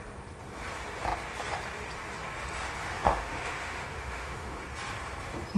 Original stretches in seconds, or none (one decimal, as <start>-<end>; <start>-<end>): 0.0-2.9; 4.6-5.6